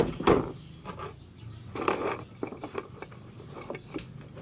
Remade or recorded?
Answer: recorded